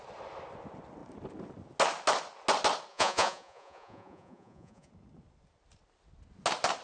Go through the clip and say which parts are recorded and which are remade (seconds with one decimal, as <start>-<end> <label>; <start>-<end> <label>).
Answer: 0.0-2.9 recorded; 2.9-4.9 remade; 4.9-6.8 recorded